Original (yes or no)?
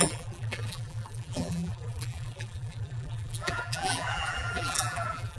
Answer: no